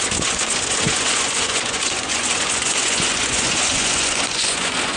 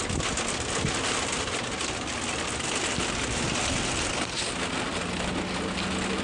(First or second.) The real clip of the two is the second